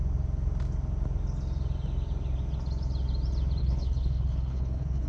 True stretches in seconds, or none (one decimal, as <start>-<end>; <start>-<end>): 0.0-3.6